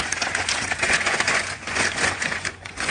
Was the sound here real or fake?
fake